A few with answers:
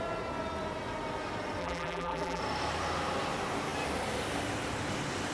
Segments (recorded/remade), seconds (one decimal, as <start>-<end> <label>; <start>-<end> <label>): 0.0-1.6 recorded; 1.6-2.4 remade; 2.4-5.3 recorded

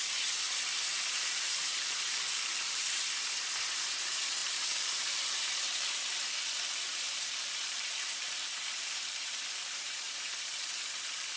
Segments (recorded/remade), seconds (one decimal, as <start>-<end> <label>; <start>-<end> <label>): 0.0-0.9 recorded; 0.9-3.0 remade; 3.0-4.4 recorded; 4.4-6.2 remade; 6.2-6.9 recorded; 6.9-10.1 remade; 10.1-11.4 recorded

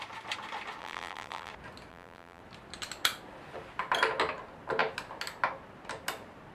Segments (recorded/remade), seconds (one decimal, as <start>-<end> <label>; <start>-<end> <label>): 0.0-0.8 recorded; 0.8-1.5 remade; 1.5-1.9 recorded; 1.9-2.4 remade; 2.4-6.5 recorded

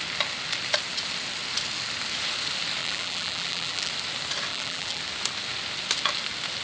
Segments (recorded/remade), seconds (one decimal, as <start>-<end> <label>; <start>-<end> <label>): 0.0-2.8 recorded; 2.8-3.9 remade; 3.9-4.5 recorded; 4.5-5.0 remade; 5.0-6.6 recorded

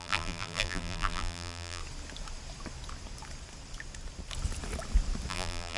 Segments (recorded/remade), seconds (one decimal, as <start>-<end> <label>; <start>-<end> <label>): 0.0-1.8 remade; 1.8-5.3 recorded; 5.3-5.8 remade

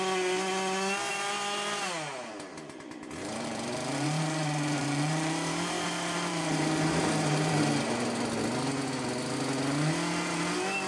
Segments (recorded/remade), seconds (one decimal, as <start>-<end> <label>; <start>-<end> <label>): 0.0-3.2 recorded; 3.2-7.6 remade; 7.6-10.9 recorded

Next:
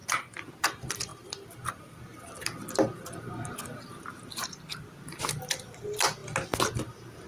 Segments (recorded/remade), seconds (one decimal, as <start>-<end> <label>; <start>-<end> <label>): 0.0-0.5 recorded; 0.5-1.1 remade; 1.1-4.7 recorded; 4.7-6.2 remade; 6.2-6.8 recorded; 6.8-7.3 remade

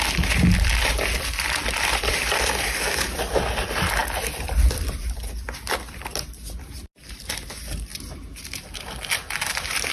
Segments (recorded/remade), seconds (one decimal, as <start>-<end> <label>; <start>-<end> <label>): 0.0-4.0 remade; 4.0-7.0 recorded; 7.0-7.9 remade; 7.9-9.4 recorded; 9.4-9.9 remade